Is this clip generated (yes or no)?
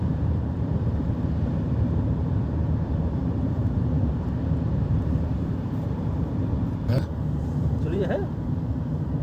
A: yes